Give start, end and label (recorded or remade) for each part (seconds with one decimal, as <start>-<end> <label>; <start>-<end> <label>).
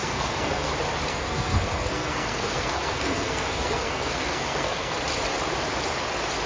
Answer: 0.0-0.7 remade; 0.7-1.1 recorded; 1.1-5.0 remade; 5.0-6.5 recorded